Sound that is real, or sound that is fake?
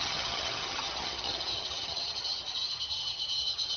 fake